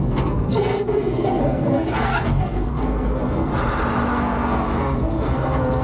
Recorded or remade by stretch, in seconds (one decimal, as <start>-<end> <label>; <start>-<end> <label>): 0.0-3.5 remade; 3.5-4.1 recorded; 4.1-5.8 remade